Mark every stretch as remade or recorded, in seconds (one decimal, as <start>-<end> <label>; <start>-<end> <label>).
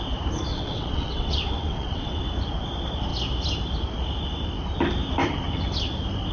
0.0-0.5 recorded; 0.5-2.2 remade; 2.2-6.3 recorded